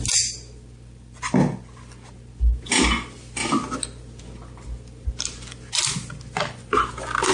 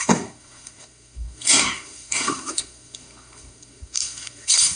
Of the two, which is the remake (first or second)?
second